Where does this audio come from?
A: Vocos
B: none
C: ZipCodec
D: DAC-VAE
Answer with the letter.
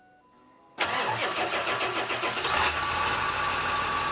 B